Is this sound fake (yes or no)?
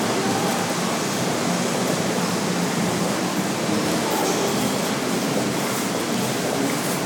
no